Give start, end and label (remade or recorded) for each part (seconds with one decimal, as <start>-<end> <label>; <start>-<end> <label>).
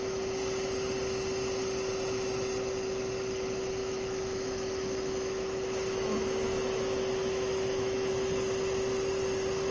0.0-3.8 recorded; 3.8-8.1 remade; 8.1-9.7 recorded